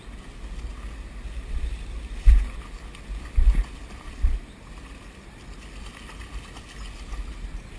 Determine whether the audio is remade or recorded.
recorded